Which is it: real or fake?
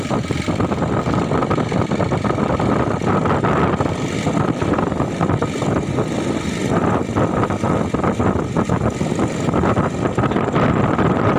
fake